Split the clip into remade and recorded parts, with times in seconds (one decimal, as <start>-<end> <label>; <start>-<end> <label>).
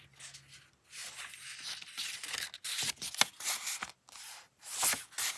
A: 0.0-5.4 recorded